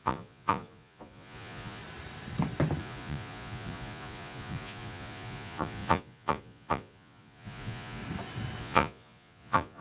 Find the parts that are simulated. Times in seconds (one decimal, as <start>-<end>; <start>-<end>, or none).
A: 0.0-1.8; 2.8-8.0; 8.6-9.8